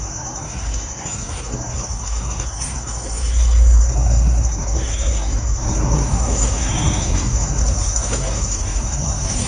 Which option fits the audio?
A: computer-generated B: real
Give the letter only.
A